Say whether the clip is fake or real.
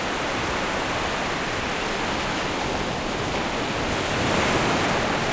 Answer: real